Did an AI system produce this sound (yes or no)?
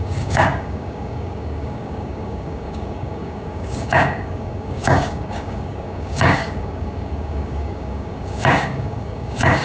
yes